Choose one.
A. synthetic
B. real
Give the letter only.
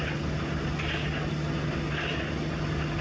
B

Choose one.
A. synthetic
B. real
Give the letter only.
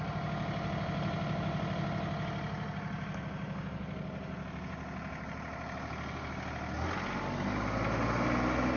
B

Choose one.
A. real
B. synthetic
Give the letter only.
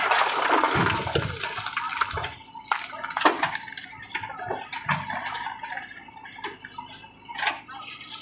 A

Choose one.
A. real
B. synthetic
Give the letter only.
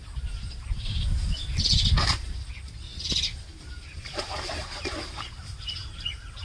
A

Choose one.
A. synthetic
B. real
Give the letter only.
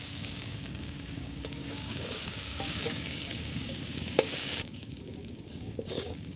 A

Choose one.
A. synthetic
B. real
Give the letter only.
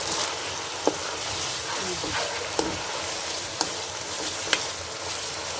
A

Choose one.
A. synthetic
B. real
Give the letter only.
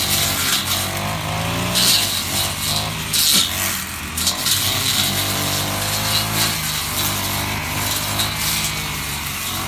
B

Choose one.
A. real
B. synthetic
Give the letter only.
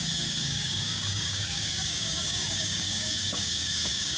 B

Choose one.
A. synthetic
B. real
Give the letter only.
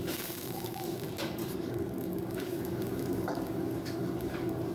A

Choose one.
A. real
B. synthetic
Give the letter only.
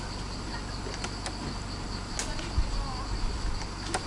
A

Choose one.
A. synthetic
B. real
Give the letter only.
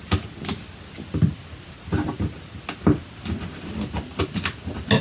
B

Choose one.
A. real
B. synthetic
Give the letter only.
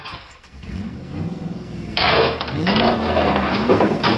B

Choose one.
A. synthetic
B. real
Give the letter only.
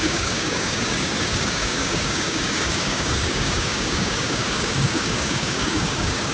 A